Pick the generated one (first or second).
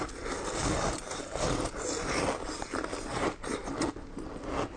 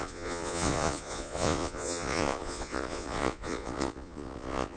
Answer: second